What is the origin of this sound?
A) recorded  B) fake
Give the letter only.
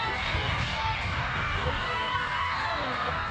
B